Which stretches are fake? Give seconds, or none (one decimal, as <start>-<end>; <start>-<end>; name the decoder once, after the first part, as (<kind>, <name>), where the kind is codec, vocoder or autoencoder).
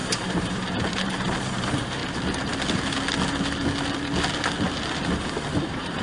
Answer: 0.0-2.0 (vocoder, BigVGAN v2); 5.6-6.0